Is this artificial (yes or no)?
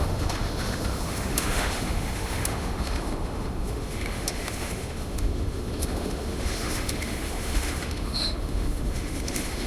yes